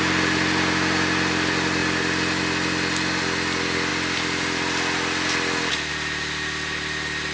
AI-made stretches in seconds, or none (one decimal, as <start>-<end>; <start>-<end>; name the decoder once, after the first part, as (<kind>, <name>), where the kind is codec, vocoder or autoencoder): none